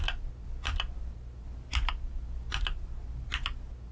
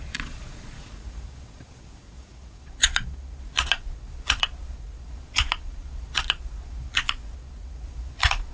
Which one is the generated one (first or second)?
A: second